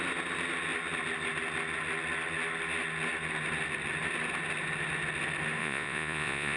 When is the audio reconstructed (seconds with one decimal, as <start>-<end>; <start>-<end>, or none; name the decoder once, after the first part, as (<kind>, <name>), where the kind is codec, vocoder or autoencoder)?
5.6-6.6 (vocoder, Vocos)